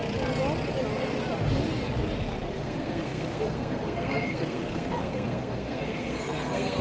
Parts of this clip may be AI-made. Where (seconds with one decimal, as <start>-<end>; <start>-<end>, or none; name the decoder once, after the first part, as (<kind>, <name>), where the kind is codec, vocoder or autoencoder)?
2.5-6.8 (codec, SNAC)